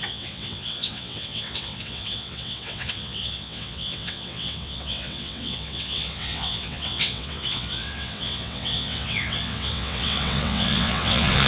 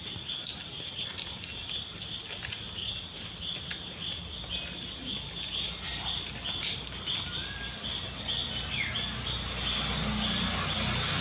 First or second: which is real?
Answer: second